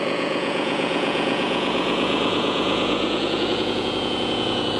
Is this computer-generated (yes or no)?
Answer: yes